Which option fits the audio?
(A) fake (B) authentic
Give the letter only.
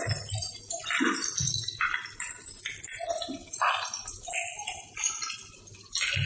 B